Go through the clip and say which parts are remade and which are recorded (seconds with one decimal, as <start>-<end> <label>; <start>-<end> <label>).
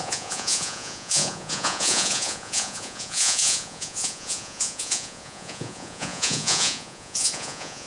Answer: 0.0-7.9 remade